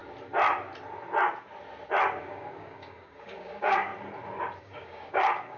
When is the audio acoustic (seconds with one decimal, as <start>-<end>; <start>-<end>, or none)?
0.0-2.2; 3.9-4.6